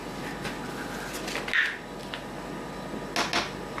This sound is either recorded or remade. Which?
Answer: recorded